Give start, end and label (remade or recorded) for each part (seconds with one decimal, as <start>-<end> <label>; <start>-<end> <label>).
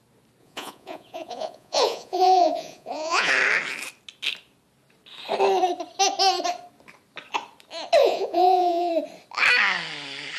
0.0-0.4 recorded; 0.4-3.3 remade; 3.3-8.0 recorded; 8.0-8.9 remade; 8.9-10.4 recorded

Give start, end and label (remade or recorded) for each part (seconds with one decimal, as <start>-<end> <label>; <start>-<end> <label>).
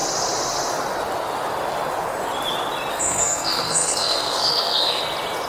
0.0-2.9 recorded; 2.9-5.0 remade; 5.0-5.5 recorded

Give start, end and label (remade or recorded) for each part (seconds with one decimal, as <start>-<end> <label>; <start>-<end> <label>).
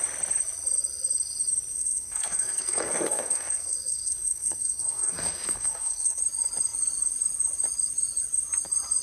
0.0-1.7 recorded; 1.7-6.2 remade; 6.2-9.0 recorded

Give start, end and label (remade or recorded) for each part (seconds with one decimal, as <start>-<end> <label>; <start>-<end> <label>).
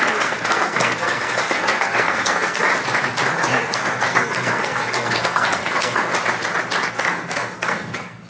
0.0-2.7 remade; 2.7-3.3 recorded; 3.3-6.1 remade; 6.1-6.9 recorded; 6.9-8.3 remade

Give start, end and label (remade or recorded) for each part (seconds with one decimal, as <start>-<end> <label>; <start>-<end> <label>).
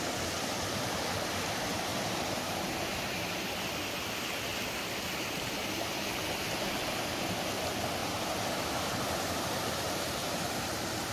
0.0-1.9 recorded; 1.9-3.6 remade; 3.6-8.0 recorded; 8.0-11.1 remade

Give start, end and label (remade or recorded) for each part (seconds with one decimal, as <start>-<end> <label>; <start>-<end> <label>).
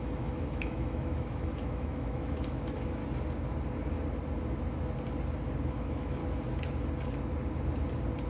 0.0-3.0 remade; 3.0-5.7 recorded; 5.7-6.2 remade; 6.2-8.3 recorded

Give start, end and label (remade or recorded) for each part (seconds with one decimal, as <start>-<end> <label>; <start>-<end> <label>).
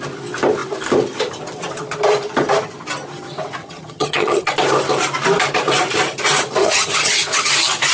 0.0-3.6 recorded; 3.6-4.5 remade; 4.5-6.6 recorded; 6.6-7.5 remade; 7.5-7.9 recorded